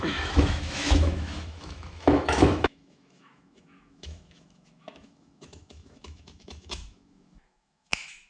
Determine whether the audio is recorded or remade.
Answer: remade